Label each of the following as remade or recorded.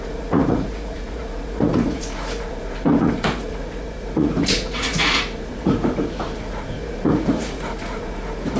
remade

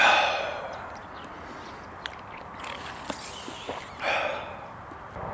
recorded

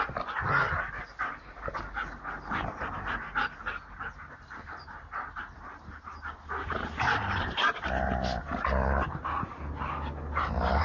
recorded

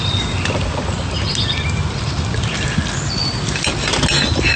recorded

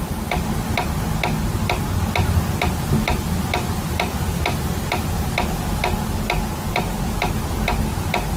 recorded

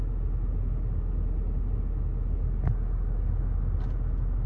recorded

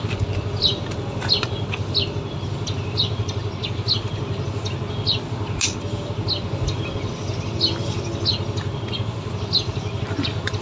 recorded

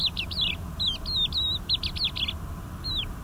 recorded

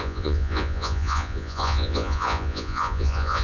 remade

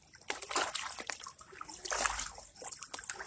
recorded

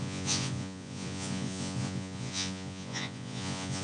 remade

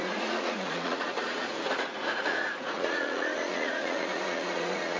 remade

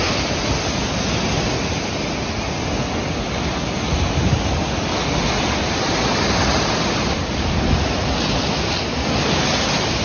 recorded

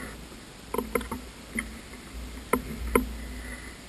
recorded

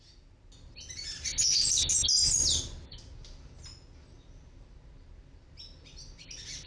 recorded